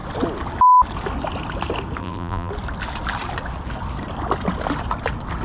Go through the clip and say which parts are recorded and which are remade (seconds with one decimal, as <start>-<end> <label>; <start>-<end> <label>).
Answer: 0.0-2.0 recorded; 2.0-2.5 remade; 2.5-5.4 recorded